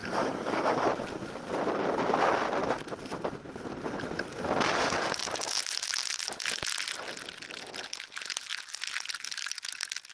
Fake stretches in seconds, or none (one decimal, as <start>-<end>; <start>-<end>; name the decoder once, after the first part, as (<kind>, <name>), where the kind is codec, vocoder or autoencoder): 0.0-0.9 (codec, DAC)